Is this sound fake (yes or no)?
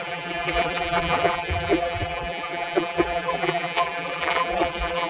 yes